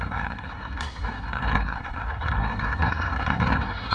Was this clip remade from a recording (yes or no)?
yes